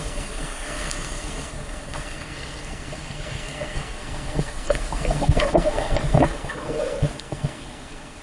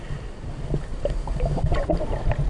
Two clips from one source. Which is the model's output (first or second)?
first